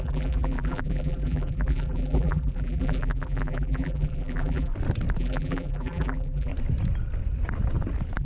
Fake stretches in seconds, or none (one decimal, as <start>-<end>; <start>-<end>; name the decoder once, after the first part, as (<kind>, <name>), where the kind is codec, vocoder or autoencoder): 0.0-4.7 (vocoder, BigVGAN v2); 5.2-6.5